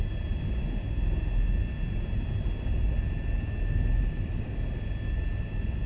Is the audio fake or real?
real